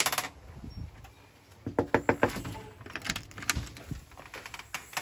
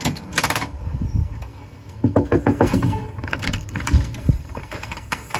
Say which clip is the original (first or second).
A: first